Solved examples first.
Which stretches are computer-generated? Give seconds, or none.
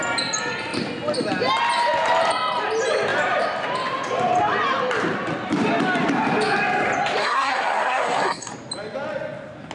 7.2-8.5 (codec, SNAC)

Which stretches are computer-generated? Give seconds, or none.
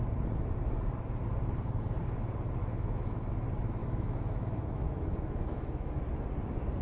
2.6-3.3 (autoencoder, DAC-VAE); 3.8-5.9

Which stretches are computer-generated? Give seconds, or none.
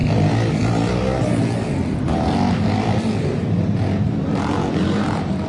2.0-5.5 (vocoder, BigVGAN v2)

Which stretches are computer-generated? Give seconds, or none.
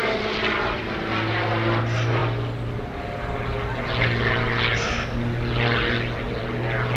none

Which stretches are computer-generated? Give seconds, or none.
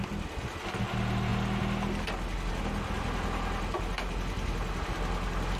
none